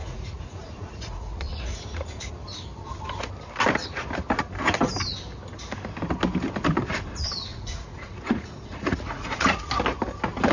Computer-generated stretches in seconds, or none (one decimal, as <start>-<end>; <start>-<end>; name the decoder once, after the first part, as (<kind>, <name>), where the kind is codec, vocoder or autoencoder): 0.0-2.4 (vocoder, Vocos); 7.5-9.7